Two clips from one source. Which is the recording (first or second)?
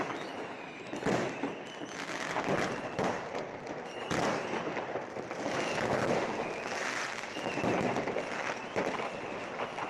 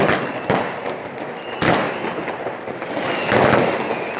second